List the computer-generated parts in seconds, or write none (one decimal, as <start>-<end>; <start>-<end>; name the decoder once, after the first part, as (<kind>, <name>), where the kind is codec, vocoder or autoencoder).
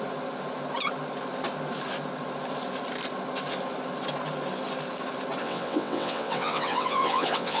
5.4-7.6 (vocoder, WaveNeXt)